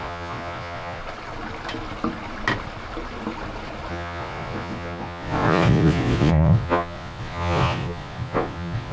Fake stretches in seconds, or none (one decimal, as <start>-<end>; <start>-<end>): 0.0-1.0; 3.9-8.9